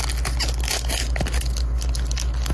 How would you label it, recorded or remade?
recorded